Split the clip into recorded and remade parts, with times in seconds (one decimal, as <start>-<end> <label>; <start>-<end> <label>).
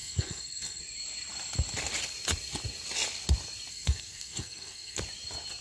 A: 0.0-0.8 remade; 0.8-3.7 recorded; 3.7-5.0 remade; 5.0-5.6 recorded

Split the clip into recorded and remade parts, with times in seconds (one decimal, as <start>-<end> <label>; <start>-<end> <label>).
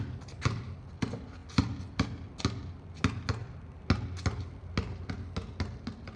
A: 0.0-6.2 recorded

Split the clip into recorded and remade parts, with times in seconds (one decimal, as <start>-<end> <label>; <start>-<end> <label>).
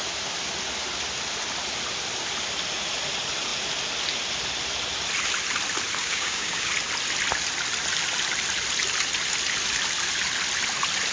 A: 0.0-6.0 recorded; 6.0-6.7 remade; 6.7-11.1 recorded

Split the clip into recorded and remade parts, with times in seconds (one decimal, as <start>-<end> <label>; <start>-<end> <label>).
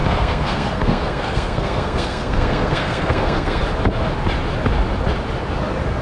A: 0.0-3.6 remade; 3.6-6.0 recorded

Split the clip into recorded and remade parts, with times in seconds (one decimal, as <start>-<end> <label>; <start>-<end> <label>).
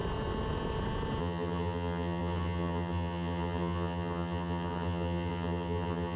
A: 0.0-1.2 recorded; 1.2-6.2 remade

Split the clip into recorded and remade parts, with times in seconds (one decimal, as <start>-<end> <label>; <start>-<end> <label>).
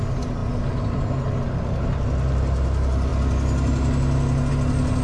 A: 0.0-0.4 recorded; 0.4-1.0 remade; 1.0-5.0 recorded